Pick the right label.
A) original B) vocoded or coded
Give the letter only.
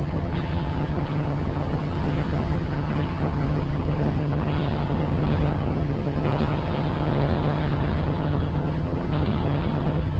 B